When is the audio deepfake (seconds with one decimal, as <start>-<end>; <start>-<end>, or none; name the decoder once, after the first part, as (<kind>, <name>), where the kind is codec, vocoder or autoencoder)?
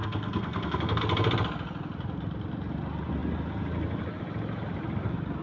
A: 0.0-1.0 (codec, SNAC)